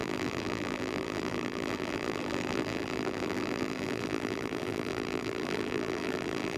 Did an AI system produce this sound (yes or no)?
yes